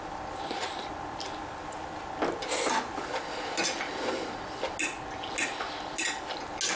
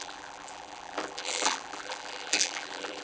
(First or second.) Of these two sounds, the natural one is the first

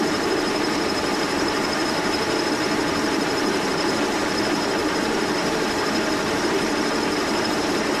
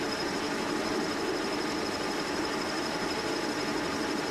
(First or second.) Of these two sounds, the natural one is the second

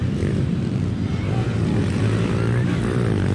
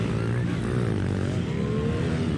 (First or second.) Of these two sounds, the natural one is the second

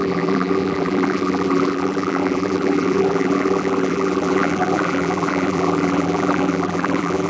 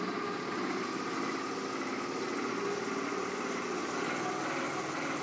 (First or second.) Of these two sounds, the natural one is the second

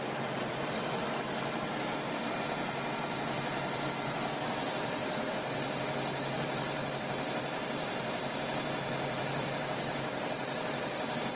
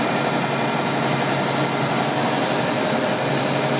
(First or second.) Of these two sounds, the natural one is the second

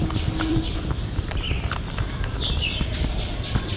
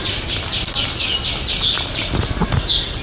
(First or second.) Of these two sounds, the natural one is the second